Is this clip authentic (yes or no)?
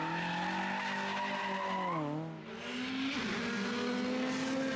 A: yes